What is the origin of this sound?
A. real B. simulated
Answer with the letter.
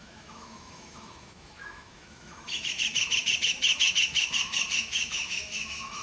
B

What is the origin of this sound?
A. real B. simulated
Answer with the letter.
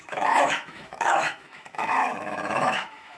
B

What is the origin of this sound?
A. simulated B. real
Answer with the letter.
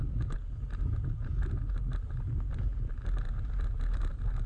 B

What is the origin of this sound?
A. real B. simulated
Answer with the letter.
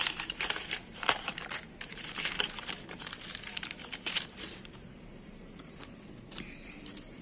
B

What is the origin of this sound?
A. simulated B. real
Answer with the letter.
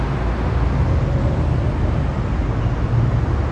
B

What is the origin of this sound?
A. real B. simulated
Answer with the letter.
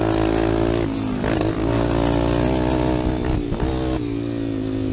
A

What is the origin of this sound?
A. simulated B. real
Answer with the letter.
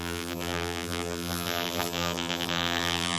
A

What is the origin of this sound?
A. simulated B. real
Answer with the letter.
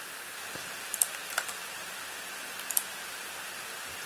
A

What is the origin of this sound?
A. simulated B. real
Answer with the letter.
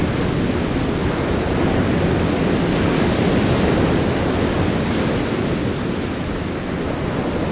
B